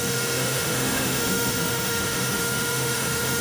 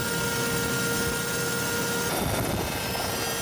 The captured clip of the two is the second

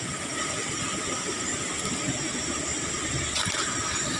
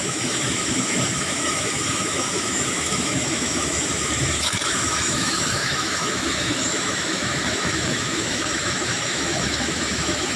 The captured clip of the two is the first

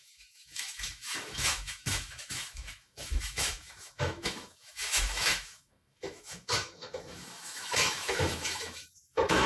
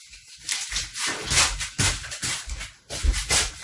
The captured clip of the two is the second